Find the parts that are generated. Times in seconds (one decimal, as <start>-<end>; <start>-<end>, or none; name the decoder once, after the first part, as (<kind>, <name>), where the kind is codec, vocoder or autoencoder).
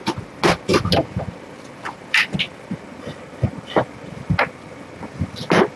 none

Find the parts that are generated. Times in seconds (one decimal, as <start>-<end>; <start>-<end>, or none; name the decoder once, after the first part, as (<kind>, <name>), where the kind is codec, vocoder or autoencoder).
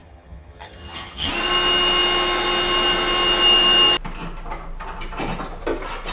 0.0-1.3 (vocoder, HiFi-GAN)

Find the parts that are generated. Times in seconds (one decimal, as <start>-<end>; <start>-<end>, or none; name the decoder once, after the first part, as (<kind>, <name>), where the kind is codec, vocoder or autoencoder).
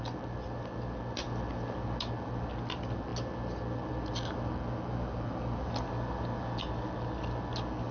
none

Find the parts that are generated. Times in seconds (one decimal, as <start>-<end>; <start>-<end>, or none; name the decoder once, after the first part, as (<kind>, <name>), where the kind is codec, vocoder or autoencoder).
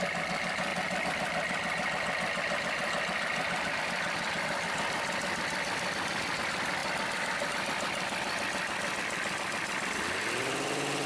none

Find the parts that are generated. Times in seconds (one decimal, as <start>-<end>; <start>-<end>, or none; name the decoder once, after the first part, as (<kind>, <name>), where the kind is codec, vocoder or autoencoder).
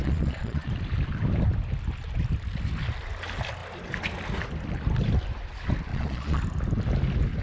0.0-0.7 (vocoder, Vocos); 5.9-6.4